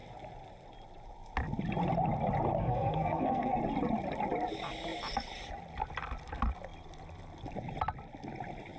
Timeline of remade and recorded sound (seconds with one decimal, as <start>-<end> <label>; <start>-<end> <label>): 0.0-2.6 recorded; 2.6-3.6 remade; 3.6-8.8 recorded

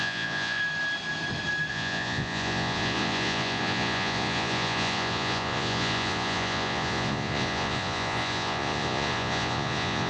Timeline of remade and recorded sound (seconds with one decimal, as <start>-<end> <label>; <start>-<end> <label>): 0.0-0.6 remade; 0.6-1.7 recorded; 1.7-10.1 remade

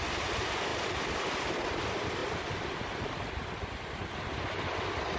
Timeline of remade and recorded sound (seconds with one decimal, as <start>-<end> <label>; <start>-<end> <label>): 0.0-5.2 recorded

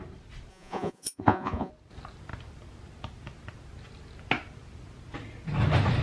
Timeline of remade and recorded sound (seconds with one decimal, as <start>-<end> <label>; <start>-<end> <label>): 0.0-0.5 recorded; 0.5-1.7 remade; 1.7-6.0 recorded

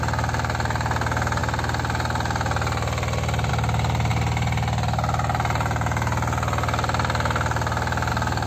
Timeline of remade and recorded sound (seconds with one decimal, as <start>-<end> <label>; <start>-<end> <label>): 0.0-8.5 recorded

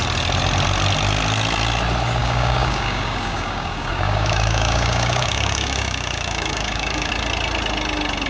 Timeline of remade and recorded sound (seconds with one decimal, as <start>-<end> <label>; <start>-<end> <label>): 0.0-2.2 recorded; 2.2-7.1 remade; 7.1-8.3 recorded

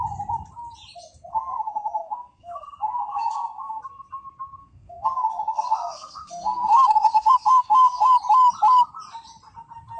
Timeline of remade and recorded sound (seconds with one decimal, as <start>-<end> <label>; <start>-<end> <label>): 0.0-1.3 recorded; 1.3-3.8 remade; 3.8-4.6 recorded; 4.6-8.1 remade; 8.1-10.0 recorded

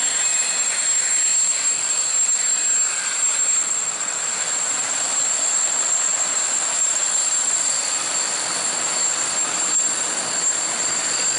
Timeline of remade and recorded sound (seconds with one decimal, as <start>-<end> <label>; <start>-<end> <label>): 0.0-11.4 recorded